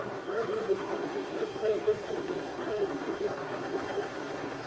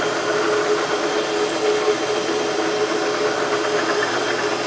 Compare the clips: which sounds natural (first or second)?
second